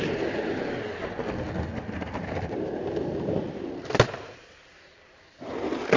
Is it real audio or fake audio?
real